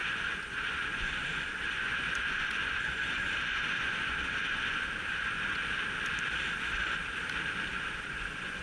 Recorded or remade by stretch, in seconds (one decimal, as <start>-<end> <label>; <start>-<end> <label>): 0.0-5.6 remade; 5.6-6.5 recorded; 6.5-7.0 remade; 7.0-7.7 recorded; 7.7-8.6 remade